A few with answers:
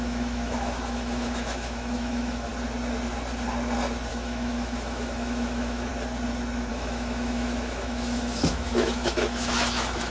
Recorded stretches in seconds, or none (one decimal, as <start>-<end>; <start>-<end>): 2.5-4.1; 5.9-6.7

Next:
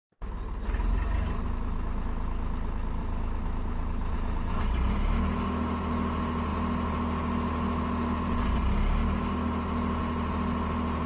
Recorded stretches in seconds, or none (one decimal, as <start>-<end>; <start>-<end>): 0.0-3.0; 5.1-11.1

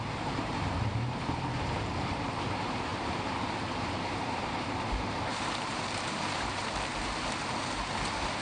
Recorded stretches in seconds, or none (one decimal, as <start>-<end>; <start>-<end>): none

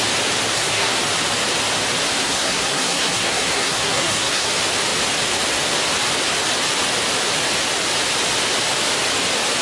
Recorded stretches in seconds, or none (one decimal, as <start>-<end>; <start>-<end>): 0.0-0.5; 1.0-2.2; 4.5-9.6

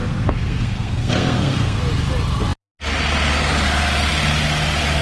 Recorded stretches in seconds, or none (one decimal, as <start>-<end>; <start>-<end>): 1.8-5.0

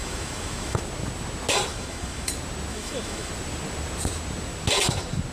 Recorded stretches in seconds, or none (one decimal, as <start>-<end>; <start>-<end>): 0.8-1.7; 2.3-2.7; 3.3-5.3

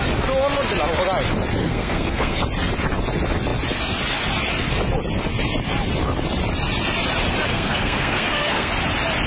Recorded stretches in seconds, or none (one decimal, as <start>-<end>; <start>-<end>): 0.0-1.6; 2.4-7.5; 8.7-9.3